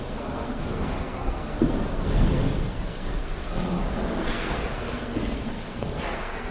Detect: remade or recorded remade